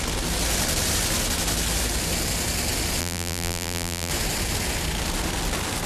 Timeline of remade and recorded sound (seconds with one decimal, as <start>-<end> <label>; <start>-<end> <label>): 0.0-3.0 recorded; 3.0-4.1 remade; 4.1-5.9 recorded